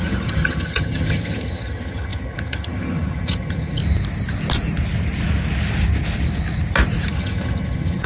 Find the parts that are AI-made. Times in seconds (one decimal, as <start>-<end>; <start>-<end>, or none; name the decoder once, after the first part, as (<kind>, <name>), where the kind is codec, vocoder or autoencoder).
0.0-3.8 (vocoder, HiFi-GAN); 7.1-8.1